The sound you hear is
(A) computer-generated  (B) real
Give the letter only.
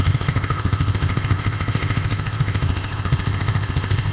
A